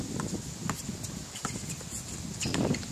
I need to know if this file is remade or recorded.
recorded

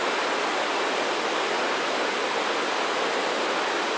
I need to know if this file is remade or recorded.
recorded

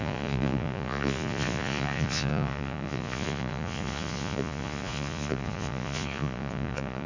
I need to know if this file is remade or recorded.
remade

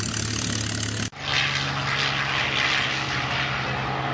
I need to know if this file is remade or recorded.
recorded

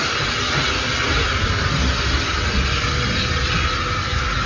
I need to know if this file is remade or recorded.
recorded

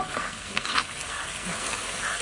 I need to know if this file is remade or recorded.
remade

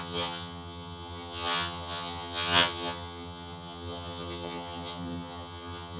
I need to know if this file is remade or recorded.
remade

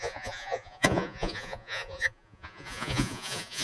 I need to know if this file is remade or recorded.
remade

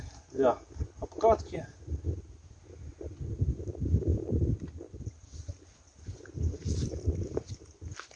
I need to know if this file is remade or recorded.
recorded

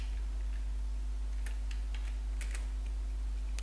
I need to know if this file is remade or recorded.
recorded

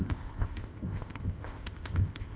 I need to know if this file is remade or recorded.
remade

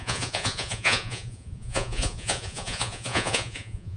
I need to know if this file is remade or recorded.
remade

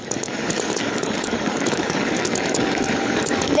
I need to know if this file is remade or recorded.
remade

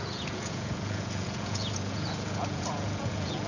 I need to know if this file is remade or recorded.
remade